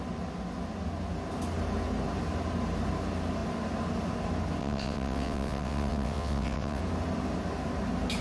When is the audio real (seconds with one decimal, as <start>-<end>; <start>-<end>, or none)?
0.0-4.6; 6.8-8.2